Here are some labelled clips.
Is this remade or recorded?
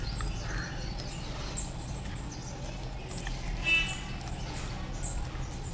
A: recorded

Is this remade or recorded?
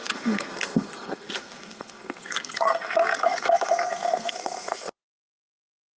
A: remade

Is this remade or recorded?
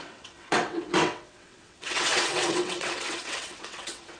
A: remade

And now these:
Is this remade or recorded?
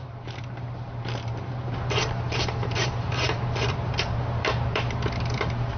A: remade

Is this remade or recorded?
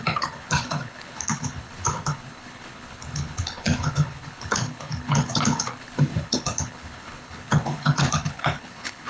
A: remade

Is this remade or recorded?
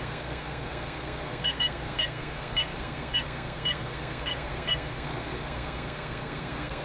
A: remade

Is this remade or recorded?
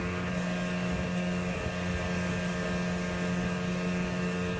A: remade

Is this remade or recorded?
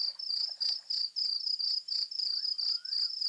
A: recorded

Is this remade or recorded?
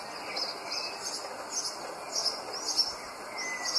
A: recorded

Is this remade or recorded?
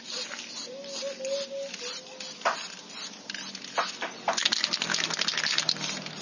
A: recorded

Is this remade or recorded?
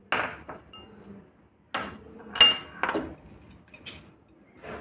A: recorded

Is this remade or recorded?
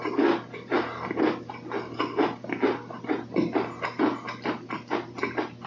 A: recorded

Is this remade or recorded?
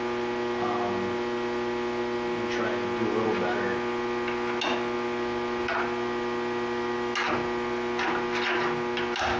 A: recorded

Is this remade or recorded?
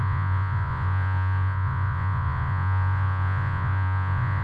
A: remade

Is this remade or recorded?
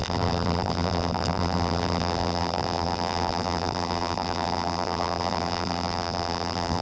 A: remade